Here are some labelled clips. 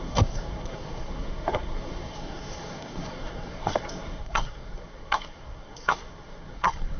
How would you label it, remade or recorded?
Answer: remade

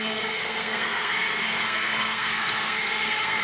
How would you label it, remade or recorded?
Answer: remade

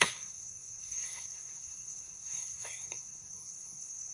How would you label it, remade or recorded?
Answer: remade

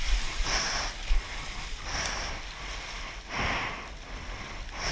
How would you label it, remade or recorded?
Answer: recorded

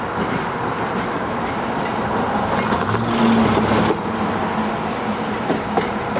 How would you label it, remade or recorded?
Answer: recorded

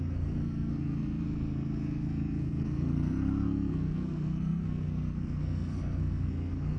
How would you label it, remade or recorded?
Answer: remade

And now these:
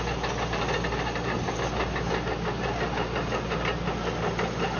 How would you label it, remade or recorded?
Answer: recorded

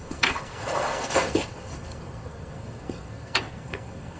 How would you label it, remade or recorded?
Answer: remade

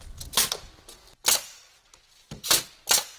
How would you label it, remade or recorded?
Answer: recorded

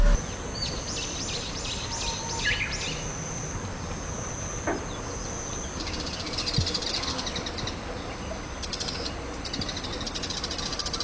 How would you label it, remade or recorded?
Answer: recorded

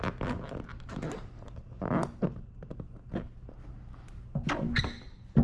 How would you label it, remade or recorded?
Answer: recorded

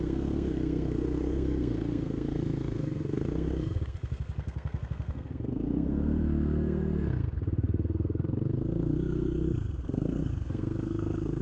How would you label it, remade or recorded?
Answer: remade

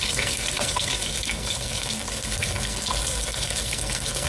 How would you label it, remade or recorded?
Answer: remade